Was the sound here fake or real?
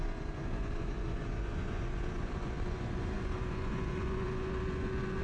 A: fake